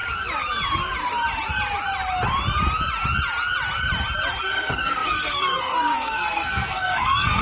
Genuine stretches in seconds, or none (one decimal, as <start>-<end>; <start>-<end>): 0.0-4.4